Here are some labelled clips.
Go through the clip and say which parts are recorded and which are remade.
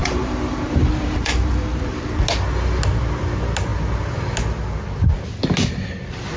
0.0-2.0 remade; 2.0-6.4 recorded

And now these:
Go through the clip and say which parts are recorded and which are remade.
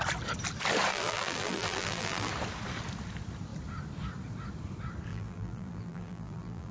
0.0-0.9 recorded; 0.9-2.3 remade; 2.3-5.1 recorded; 5.1-6.7 remade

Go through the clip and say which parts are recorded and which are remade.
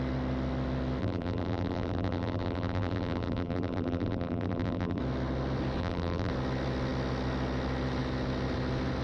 0.0-1.0 recorded; 1.0-5.0 remade; 5.0-5.8 recorded; 5.8-6.3 remade; 6.3-9.0 recorded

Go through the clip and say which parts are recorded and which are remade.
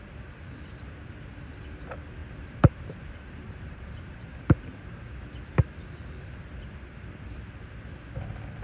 0.0-2.2 recorded; 2.2-4.6 remade; 4.6-8.6 recorded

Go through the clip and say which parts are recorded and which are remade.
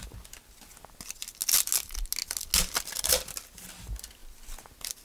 0.0-5.0 recorded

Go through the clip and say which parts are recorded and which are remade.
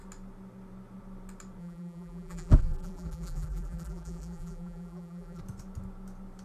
0.0-1.6 recorded; 1.6-5.4 remade; 5.4-6.4 recorded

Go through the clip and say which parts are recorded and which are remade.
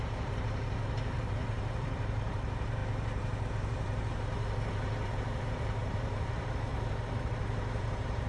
0.0-2.8 remade; 2.8-3.5 recorded; 3.5-8.3 remade